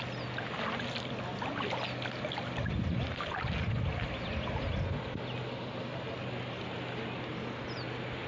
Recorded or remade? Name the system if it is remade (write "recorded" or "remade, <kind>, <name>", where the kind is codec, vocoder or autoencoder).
recorded